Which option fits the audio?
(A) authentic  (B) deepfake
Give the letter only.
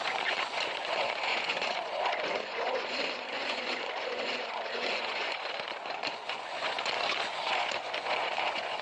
B